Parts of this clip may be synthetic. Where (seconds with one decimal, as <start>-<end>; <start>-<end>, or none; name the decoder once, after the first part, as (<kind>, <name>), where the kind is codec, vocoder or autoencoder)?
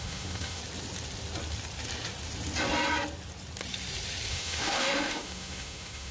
0.0-0.6 (autoencoder, DAC-VAE); 4.3-6.1